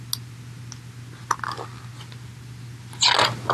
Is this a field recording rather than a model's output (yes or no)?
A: yes